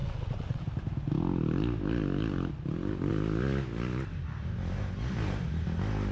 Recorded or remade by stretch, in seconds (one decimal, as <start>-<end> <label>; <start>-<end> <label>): 0.0-0.6 remade; 0.6-6.1 recorded